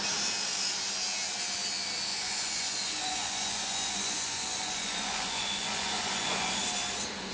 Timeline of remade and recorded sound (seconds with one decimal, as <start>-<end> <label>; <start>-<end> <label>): 0.0-2.1 recorded; 2.1-6.5 remade; 6.5-7.3 recorded